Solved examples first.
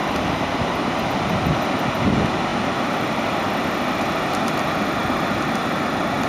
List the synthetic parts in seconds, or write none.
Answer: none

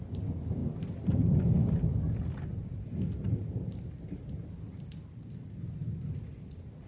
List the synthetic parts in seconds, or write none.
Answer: 2.5-3.6 (vocoder, BigVGAN v2)